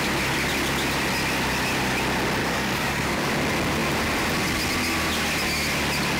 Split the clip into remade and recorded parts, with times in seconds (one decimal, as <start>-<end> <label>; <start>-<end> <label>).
0.0-2.4 recorded; 2.4-3.3 remade; 3.3-6.2 recorded